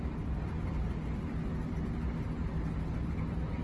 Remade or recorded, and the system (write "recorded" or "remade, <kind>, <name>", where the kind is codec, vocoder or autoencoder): recorded